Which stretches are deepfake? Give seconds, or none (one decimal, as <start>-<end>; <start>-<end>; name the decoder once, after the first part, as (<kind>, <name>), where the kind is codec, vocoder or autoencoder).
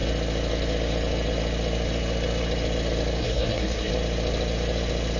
3.2-3.9 (codec, SNAC)